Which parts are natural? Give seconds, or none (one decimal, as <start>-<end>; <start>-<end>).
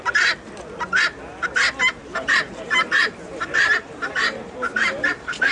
0.0-2.0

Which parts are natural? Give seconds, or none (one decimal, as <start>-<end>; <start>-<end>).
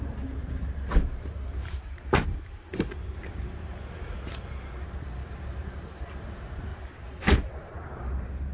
3.7-4.3; 6.7-7.2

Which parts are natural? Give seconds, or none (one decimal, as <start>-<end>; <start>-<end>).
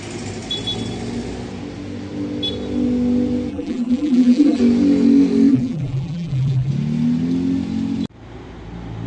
0.0-3.5; 4.6-5.5; 6.7-9.1